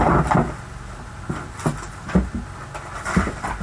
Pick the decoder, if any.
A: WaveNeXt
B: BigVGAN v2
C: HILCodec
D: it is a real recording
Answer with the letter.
D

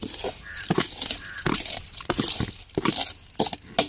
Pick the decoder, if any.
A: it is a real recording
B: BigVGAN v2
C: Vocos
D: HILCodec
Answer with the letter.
A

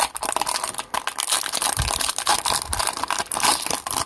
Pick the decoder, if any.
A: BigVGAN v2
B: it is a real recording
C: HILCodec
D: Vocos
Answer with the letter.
B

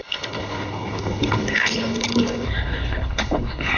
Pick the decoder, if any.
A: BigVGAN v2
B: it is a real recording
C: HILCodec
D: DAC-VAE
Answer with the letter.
C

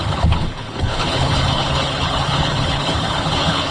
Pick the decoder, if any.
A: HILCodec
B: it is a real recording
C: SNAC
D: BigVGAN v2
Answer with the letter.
A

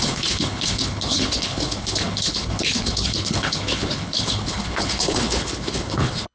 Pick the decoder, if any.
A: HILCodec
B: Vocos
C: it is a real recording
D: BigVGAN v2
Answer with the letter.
A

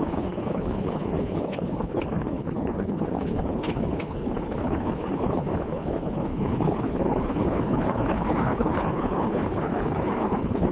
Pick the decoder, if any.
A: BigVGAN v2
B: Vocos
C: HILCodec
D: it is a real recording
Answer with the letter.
C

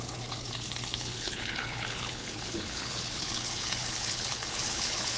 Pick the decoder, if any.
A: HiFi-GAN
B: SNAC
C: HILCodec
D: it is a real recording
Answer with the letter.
C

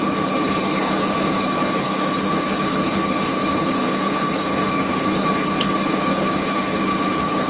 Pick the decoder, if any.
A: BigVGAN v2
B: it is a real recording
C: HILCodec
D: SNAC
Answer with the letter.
C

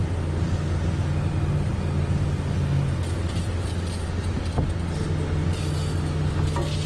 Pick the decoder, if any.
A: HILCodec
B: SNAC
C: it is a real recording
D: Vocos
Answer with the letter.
C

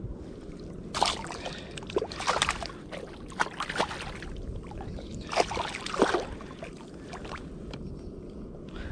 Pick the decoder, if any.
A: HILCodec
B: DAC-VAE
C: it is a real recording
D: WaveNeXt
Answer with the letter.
C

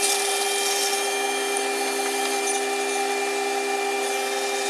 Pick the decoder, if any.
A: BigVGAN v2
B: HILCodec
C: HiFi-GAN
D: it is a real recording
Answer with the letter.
D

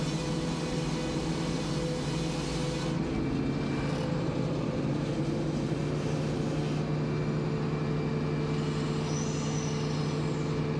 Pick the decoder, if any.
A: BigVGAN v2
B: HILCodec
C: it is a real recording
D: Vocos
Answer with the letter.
C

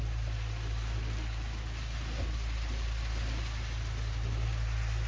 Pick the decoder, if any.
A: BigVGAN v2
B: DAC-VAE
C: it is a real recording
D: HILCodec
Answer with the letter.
C